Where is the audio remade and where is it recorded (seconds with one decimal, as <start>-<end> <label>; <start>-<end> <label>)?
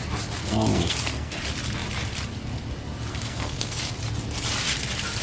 0.0-0.4 recorded; 0.4-1.4 remade; 1.4-3.1 recorded; 3.1-3.8 remade; 3.8-5.2 recorded